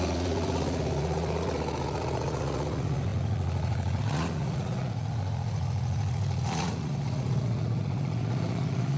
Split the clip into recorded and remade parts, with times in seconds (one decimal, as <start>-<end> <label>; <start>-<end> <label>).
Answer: 0.0-9.0 remade